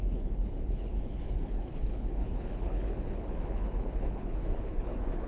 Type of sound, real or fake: fake